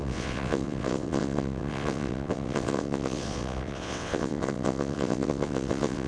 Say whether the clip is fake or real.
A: fake